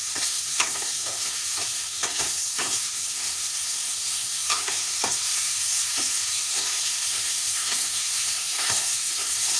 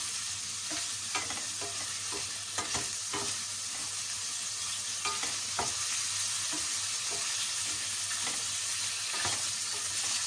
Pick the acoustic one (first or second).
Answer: second